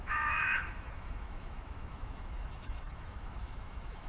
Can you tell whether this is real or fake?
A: fake